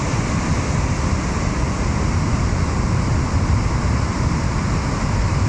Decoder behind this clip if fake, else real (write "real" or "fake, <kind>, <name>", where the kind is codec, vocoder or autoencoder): real